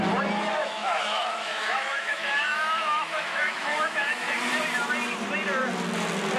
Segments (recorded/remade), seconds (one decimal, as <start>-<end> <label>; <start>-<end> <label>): 0.0-0.6 recorded; 0.6-4.4 remade; 4.4-6.4 recorded

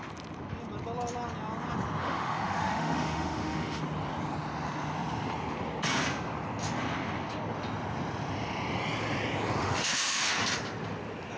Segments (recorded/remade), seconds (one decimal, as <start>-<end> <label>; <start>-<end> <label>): 0.0-2.0 recorded; 2.0-3.8 remade; 3.8-9.6 recorded; 9.6-10.3 remade; 10.3-11.4 recorded

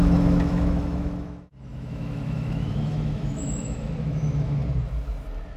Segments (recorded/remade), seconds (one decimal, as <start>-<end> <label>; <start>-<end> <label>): 0.0-4.6 remade; 4.6-5.6 recorded

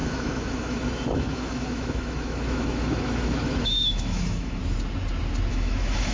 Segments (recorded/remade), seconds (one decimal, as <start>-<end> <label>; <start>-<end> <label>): 0.0-4.6 remade; 4.6-5.5 recorded; 5.5-6.1 remade

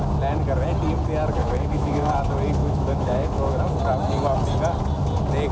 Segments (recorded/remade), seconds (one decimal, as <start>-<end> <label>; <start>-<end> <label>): 0.0-1.4 recorded; 1.4-2.1 remade; 2.1-2.6 recorded; 2.6-3.6 remade; 3.6-5.5 recorded

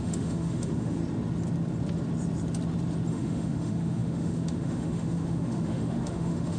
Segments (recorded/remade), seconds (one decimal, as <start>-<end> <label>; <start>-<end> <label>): 0.0-1.0 remade; 1.0-3.1 recorded; 3.1-6.6 remade

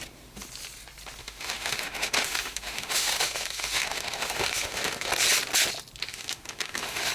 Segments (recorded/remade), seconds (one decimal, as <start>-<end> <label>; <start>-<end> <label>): 0.0-1.2 recorded; 1.2-5.1 remade; 5.1-6.1 recorded; 6.1-7.1 remade

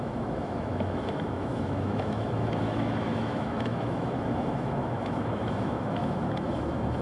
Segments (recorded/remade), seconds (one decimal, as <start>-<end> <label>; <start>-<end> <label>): 0.0-7.0 remade